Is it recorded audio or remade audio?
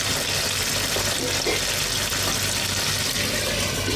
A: recorded